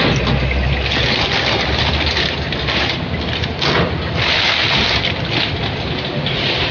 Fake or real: real